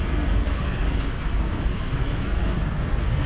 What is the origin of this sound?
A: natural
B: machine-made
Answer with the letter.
B